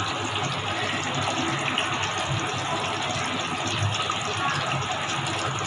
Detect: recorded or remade recorded